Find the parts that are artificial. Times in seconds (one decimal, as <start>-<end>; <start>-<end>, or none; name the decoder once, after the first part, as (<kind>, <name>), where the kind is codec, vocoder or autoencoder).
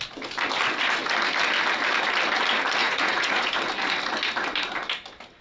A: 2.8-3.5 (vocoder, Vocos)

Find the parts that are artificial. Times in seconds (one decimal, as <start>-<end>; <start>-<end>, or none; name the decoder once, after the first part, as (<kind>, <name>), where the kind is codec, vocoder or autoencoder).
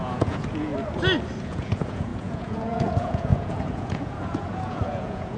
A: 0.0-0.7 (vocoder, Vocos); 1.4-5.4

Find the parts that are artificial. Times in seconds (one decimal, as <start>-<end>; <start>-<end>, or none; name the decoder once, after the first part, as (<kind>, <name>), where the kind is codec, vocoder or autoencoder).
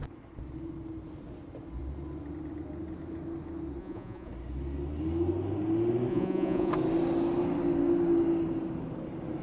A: 3.8-4.3 (vocoder, Vocos); 6.1-6.7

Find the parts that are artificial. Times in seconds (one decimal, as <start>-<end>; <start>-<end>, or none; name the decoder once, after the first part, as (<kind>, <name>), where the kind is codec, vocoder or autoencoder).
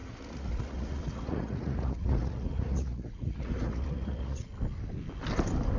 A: 0.0-4.5 (vocoder, Vocos)